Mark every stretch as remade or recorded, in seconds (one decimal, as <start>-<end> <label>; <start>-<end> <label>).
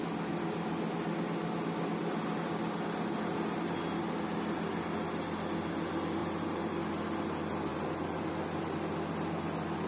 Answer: 0.0-6.2 recorded; 6.2-6.8 remade; 6.8-7.7 recorded; 7.7-8.3 remade; 8.3-9.9 recorded